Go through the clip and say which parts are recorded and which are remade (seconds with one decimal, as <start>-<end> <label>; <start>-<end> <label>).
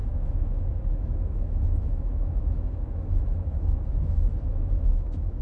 0.0-5.4 remade